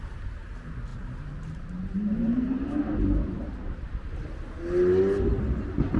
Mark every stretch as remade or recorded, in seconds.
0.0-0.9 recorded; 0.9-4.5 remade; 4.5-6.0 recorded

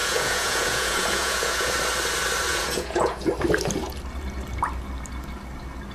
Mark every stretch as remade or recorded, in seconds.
0.0-1.7 remade; 1.7-2.5 recorded; 2.5-3.3 remade; 3.3-5.9 recorded

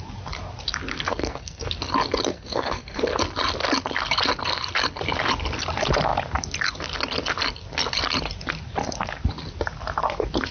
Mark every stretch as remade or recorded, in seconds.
0.0-1.1 recorded; 1.1-1.7 remade; 1.7-2.3 recorded; 2.3-3.0 remade; 3.0-10.5 recorded

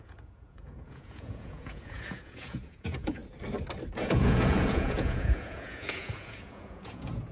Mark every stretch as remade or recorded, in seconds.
0.0-3.2 remade; 3.2-3.9 recorded; 3.9-7.3 remade

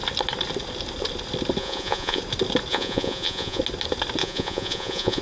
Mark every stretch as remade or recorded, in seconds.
0.0-1.6 recorded; 1.6-2.2 remade; 2.2-2.7 recorded; 2.7-3.6 remade; 3.6-4.2 recorded; 4.2-5.2 remade

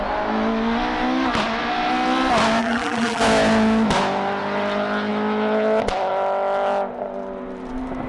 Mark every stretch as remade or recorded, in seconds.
0.0-2.6 recorded; 2.6-3.2 remade; 3.2-8.1 recorded